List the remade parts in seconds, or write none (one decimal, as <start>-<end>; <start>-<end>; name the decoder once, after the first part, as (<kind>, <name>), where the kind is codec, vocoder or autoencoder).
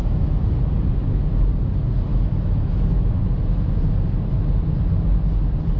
0.0-0.6 (autoencoder, DAC-VAE); 2.1-3.2